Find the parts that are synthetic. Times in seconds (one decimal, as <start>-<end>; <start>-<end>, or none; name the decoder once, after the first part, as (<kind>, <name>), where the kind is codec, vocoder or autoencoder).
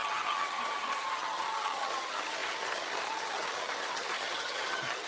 0.0-5.1 (vocoder, HiFi-GAN)